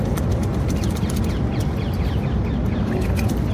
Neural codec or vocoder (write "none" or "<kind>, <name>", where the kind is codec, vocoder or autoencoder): none